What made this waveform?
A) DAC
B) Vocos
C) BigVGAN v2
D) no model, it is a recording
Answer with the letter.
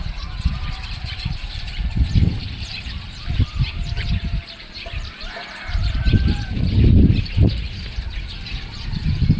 C